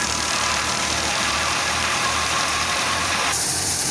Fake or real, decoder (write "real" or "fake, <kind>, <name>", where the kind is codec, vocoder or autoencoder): fake, vocoder, BigVGAN v2